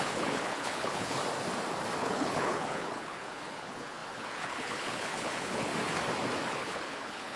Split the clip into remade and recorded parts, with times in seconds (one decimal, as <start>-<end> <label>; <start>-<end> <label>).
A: 0.0-1.2 remade; 1.2-2.0 recorded; 2.0-5.7 remade; 5.7-6.5 recorded; 6.5-7.4 remade